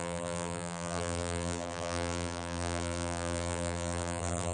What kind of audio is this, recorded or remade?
remade